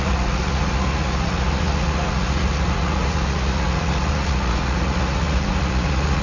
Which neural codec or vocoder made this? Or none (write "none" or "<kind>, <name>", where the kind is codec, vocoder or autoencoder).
vocoder, Vocos